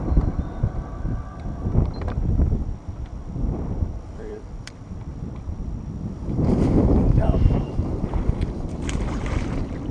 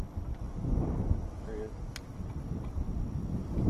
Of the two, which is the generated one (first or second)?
first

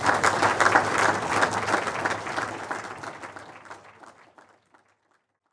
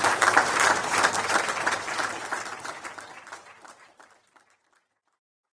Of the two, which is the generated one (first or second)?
second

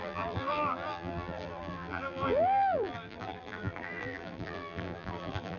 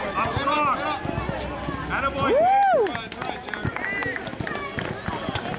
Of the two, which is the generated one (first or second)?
first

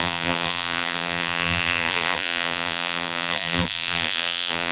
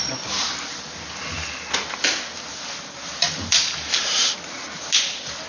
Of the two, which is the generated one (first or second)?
first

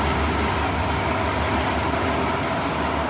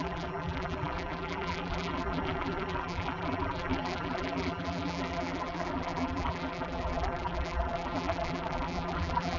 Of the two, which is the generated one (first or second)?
second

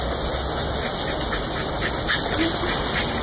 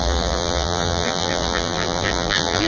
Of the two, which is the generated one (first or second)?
second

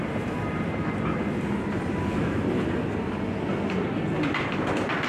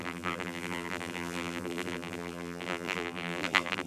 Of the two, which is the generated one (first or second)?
second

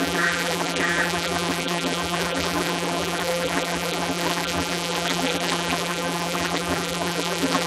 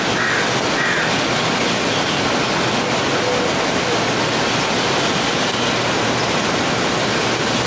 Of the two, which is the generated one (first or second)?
first